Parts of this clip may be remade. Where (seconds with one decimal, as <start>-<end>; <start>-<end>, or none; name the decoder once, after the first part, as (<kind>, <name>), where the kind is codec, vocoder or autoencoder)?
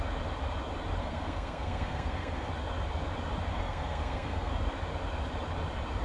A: 1.0-2.5 (codec, SNAC); 3.5-4.5